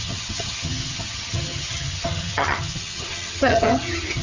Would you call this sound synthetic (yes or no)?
yes